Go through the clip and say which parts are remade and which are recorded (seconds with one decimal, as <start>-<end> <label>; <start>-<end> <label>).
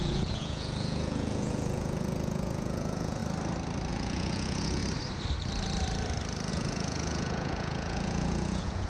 0.0-3.2 remade; 3.2-3.9 recorded; 3.9-4.8 remade; 4.8-6.5 recorded; 6.5-8.9 remade